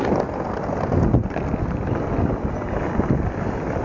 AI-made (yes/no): no